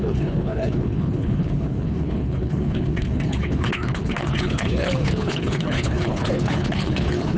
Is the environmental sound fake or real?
fake